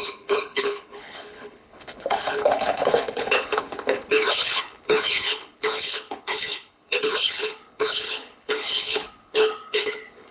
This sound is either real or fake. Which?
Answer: fake